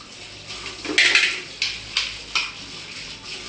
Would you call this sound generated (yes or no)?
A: no